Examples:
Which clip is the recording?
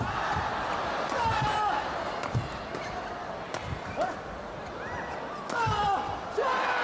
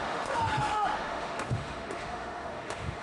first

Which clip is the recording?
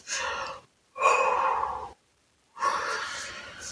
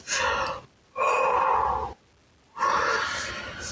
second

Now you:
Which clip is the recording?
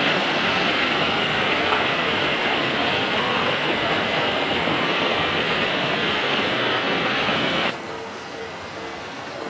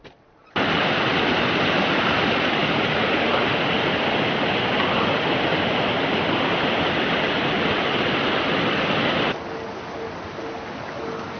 second